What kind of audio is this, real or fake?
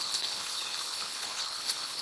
fake